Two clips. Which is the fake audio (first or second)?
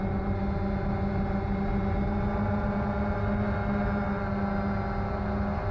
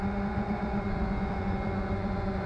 second